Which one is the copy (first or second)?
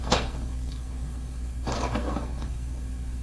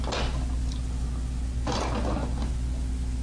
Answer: first